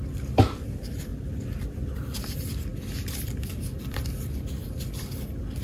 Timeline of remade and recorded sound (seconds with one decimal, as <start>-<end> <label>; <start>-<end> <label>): 0.0-5.6 remade